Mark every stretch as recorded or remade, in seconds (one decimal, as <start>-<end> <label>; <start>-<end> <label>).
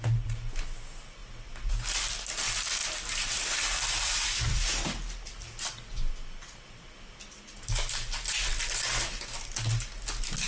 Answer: 0.0-1.2 recorded; 1.2-2.1 remade; 2.1-2.8 recorded; 2.8-6.1 remade; 6.1-10.5 recorded